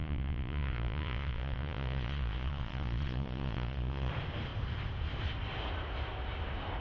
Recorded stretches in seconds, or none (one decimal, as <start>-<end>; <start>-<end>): 4.1-6.8